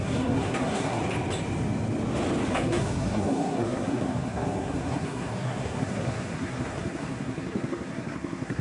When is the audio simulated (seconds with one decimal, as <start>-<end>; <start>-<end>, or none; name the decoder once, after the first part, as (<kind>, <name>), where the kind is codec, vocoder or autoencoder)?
0.0-1.0 (codec, SNAC); 2.5-8.6